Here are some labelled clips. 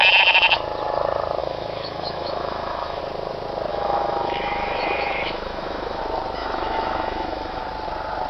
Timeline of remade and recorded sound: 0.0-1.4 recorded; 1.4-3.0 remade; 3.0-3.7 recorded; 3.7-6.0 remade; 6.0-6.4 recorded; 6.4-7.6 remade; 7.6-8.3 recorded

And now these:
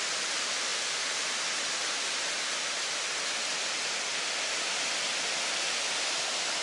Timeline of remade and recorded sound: 0.0-6.6 recorded

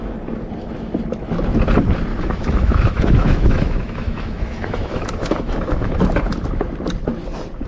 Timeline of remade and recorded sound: 0.0-2.1 recorded; 2.1-5.9 remade; 5.9-7.7 recorded

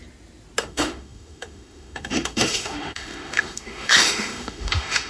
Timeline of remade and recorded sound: 0.0-0.6 recorded; 0.6-5.1 remade

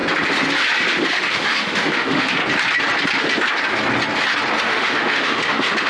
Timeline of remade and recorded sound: 0.0-1.1 recorded; 1.1-2.4 remade; 2.4-4.6 recorded; 4.6-5.9 remade

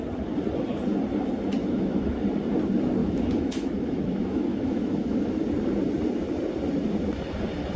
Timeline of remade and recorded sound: 0.0-1.6 recorded; 1.6-2.2 remade; 2.2-3.0 recorded; 3.0-5.4 remade; 5.4-7.8 recorded

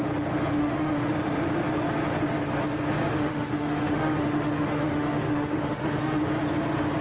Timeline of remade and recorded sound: 0.0-0.6 recorded; 0.6-1.1 remade; 1.1-3.1 recorded; 3.1-6.2 remade; 6.2-7.0 recorded